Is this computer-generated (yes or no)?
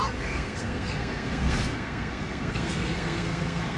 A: yes